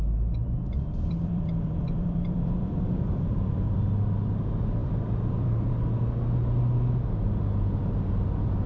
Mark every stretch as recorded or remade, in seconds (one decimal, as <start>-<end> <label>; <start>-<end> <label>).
0.0-0.4 recorded; 0.4-3.7 remade; 3.7-4.8 recorded; 4.8-5.7 remade; 5.7-8.7 recorded